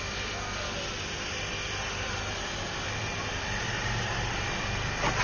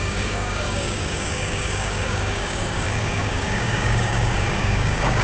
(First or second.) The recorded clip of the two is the first